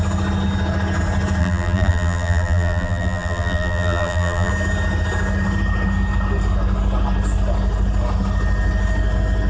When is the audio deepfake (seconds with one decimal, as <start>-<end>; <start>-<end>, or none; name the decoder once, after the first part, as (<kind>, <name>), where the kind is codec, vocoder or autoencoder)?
1.4-4.5 (vocoder, BigVGAN v2)